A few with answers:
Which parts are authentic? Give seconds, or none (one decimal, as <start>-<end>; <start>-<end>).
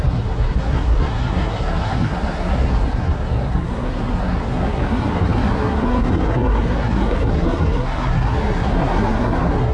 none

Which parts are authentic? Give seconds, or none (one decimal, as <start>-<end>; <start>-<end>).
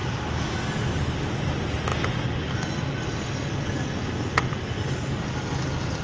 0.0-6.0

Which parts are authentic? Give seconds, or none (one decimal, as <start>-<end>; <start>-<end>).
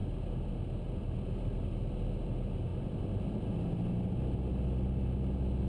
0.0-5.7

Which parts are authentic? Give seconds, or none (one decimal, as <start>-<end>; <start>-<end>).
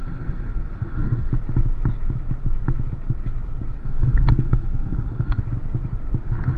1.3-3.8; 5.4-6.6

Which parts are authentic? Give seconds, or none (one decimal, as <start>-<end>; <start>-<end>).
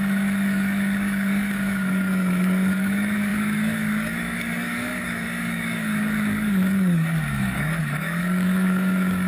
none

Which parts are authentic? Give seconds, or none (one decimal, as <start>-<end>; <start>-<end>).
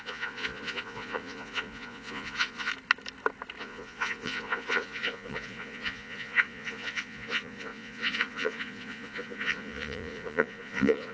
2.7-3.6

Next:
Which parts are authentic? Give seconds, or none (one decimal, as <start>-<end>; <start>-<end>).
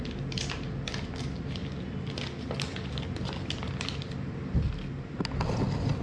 0.0-6.0